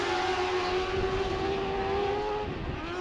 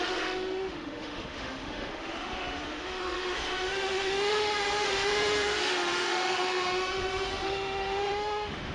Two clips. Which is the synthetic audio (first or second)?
second